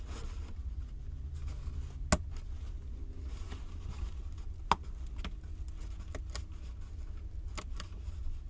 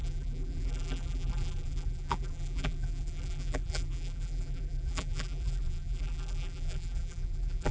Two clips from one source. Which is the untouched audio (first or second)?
first